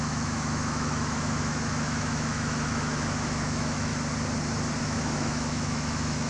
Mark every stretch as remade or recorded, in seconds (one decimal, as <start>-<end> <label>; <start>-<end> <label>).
0.0-3.9 remade; 3.9-4.8 recorded; 4.8-6.3 remade